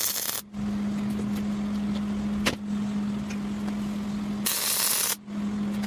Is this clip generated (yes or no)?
no